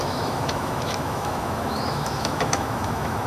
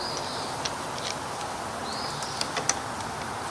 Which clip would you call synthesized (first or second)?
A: first